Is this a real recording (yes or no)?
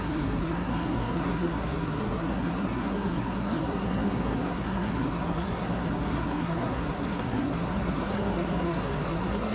no